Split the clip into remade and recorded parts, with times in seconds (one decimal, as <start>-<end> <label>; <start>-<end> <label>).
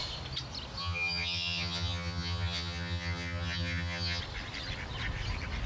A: 0.0-0.8 recorded; 0.8-4.2 remade; 4.2-5.7 recorded